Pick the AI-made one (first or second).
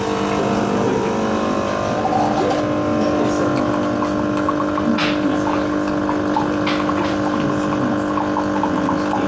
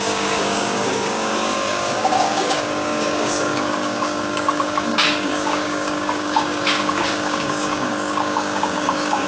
second